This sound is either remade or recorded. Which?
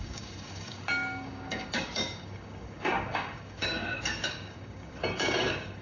remade